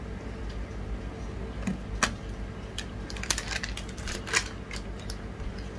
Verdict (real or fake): real